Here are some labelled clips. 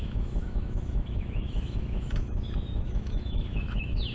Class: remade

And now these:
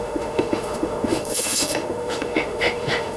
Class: remade